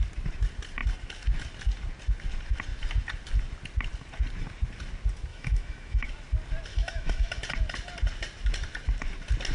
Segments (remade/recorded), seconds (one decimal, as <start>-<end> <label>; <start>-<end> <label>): 0.0-5.3 recorded; 5.3-6.1 remade; 6.1-6.7 recorded; 6.7-7.4 remade; 7.4-9.5 recorded